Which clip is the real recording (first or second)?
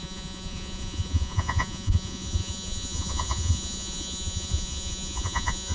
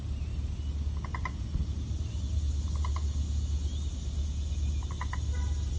second